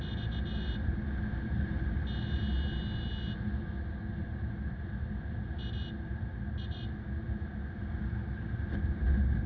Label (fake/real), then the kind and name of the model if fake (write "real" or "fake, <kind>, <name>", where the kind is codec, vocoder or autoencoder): real